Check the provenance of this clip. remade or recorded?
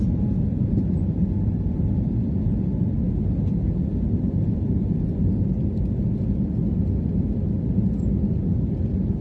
recorded